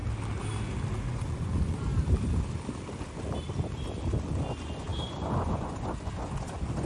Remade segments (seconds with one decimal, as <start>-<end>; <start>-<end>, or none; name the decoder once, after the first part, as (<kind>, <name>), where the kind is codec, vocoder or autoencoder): 1.0-1.9 (vocoder, Vocos); 4.5-6.9